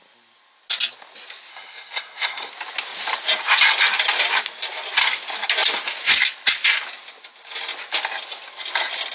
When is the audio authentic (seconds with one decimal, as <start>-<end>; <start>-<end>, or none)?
0.0-1.5; 2.5-9.1